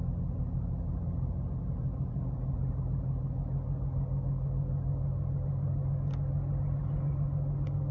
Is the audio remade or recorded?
recorded